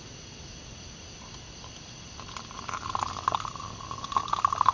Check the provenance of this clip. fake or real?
real